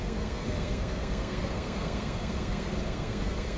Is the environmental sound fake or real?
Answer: fake